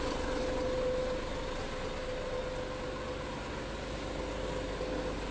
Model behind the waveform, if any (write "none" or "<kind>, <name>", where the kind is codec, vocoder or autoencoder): none